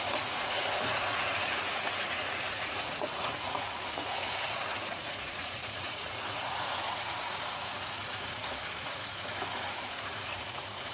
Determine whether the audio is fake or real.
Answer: fake